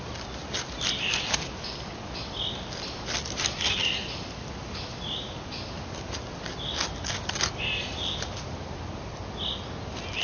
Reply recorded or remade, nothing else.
recorded